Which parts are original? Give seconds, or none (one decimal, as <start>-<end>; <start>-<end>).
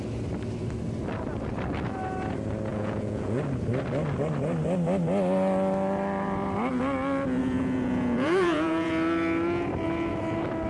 0.0-2.7; 3.4-7.4; 8.9-10.7